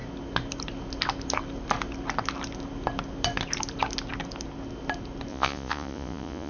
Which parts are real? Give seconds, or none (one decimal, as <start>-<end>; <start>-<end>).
0.0-5.3